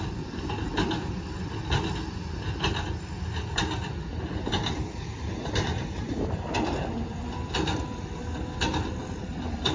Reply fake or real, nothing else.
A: real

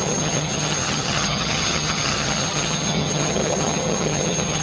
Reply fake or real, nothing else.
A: fake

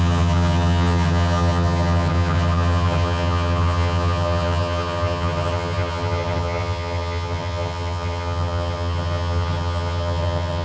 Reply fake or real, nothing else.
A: fake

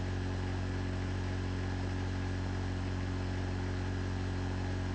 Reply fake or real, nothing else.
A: real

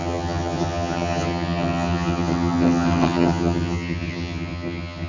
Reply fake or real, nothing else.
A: fake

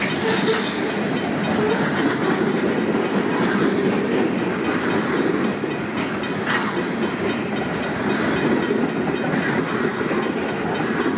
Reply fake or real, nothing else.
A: real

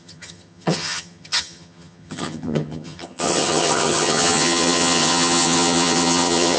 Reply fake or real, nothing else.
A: fake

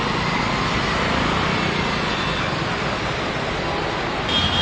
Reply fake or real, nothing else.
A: real